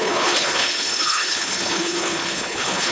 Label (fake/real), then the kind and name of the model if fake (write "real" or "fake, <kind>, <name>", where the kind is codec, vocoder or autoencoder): fake, codec, HILCodec